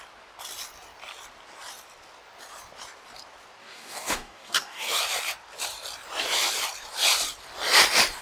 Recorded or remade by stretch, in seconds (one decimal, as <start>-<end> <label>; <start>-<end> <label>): 0.0-3.6 recorded; 3.6-5.0 remade; 5.0-8.2 recorded